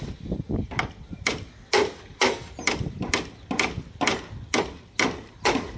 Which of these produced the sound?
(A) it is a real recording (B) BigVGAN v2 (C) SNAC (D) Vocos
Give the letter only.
A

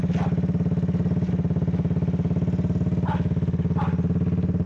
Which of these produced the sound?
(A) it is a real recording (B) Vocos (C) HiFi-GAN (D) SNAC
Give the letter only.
A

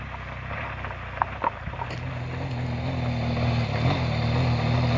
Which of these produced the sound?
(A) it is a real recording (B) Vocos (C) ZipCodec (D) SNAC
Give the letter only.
A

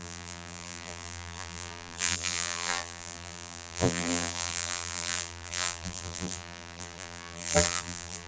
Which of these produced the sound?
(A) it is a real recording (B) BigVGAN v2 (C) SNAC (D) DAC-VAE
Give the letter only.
B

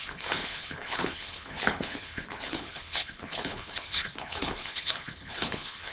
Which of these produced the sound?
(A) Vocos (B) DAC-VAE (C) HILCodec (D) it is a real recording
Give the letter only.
C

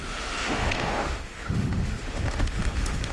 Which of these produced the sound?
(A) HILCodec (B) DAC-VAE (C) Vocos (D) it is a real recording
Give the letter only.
B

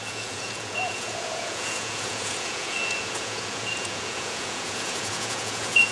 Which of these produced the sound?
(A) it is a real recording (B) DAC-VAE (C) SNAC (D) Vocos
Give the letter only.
D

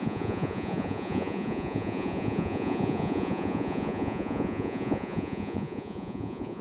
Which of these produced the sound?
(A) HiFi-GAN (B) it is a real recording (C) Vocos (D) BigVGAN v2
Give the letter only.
C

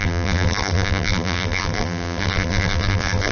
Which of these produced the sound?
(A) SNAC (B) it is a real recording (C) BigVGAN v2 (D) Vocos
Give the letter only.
C